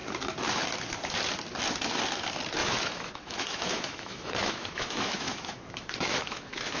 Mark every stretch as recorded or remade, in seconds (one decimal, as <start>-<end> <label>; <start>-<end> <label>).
0.0-2.6 recorded; 2.6-6.8 remade